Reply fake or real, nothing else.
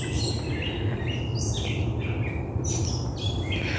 real